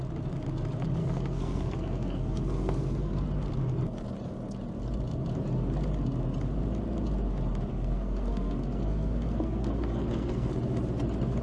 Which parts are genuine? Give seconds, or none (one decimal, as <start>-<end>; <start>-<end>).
0.0-1.0; 3.1-7.7; 10.5-11.4

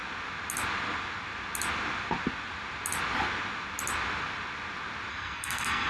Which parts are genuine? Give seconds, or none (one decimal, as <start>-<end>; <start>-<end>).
0.0-5.1